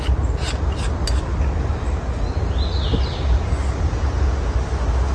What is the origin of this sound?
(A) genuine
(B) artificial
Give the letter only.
A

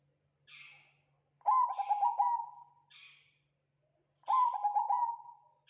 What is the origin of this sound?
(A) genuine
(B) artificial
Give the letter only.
B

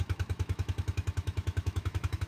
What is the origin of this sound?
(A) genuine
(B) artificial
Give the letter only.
B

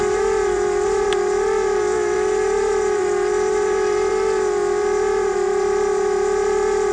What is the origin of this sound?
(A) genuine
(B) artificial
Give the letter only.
B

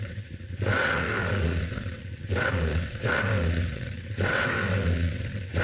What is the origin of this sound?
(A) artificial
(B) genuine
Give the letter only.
A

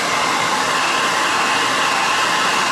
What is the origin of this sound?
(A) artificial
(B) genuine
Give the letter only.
B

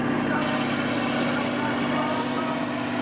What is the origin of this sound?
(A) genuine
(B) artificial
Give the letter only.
A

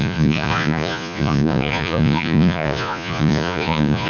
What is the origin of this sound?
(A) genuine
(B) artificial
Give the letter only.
B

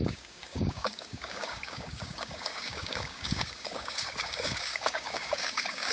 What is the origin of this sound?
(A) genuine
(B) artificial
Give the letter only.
B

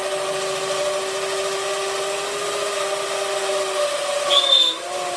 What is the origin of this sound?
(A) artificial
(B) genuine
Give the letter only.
B